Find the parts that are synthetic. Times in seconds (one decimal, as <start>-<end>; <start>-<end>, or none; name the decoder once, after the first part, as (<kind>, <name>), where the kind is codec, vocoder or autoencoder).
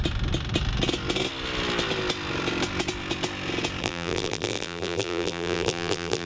3.8-6.3 (vocoder, BigVGAN v2)